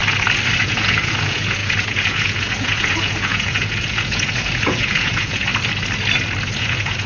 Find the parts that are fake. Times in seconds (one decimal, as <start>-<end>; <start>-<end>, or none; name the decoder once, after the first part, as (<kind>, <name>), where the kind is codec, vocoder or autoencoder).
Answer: 0.6-5.5 (vocoder, Vocos); 6.6-7.1